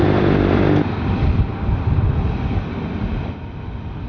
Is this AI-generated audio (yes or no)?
yes